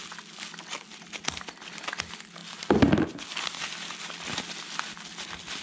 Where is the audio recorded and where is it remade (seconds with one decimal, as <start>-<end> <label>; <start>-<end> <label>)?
0.0-5.6 recorded